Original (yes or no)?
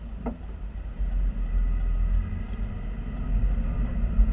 yes